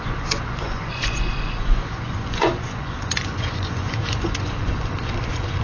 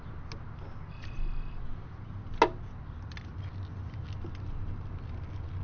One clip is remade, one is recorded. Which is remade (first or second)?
first